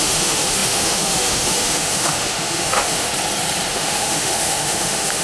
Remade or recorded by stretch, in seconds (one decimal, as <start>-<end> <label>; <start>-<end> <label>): 0.0-3.1 remade; 3.1-3.7 recorded; 3.7-5.2 remade